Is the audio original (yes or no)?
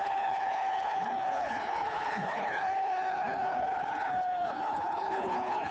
no